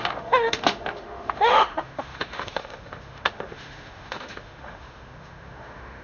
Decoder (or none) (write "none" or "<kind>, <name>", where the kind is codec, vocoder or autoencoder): autoencoder, DAC-VAE